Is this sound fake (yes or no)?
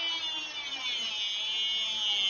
no